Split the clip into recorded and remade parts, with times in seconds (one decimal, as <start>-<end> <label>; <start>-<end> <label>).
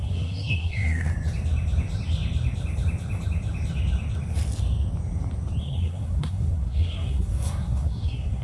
0.0-1.1 remade; 1.1-5.6 recorded; 5.6-8.4 remade